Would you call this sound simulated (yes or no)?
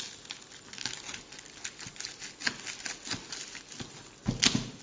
no